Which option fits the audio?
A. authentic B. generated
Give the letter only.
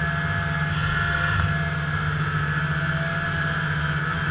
A